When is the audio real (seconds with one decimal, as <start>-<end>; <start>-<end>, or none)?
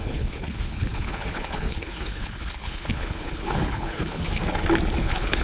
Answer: 4.4-5.0